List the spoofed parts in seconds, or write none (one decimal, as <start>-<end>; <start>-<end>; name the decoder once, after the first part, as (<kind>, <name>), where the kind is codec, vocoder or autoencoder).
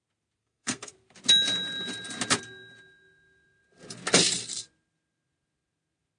0.4-0.9 (codec, SNAC)